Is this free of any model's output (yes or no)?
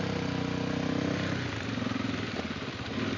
yes